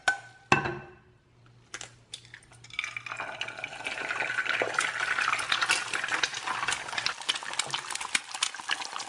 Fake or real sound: real